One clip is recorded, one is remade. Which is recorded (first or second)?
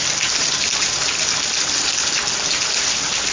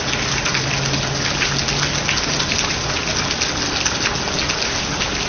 second